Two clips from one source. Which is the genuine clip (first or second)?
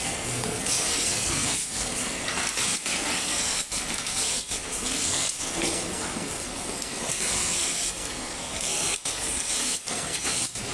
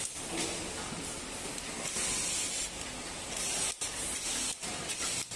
second